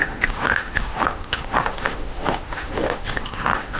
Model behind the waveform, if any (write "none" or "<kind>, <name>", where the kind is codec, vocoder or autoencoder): autoencoder, DAC-VAE